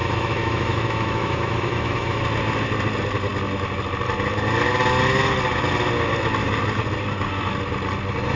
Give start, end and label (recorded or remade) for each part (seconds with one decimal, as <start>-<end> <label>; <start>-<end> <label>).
0.0-2.2 remade; 2.2-8.4 recorded